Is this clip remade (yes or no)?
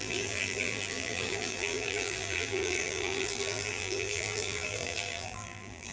yes